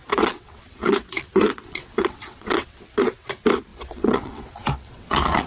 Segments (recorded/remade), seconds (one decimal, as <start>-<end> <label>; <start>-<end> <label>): 0.0-3.3 remade; 3.3-3.7 recorded; 3.7-5.5 remade